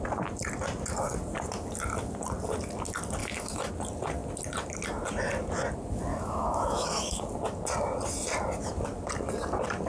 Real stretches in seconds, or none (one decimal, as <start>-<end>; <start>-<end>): 0.0-3.2; 3.7-6.1; 7.2-9.9